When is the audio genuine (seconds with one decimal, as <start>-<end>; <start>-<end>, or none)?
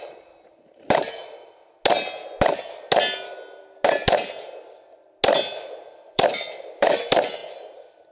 1.2-5.8